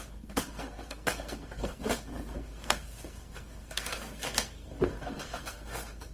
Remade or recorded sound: remade